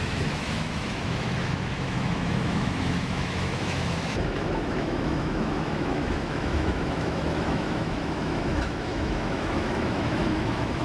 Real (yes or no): no